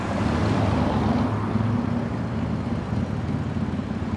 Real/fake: real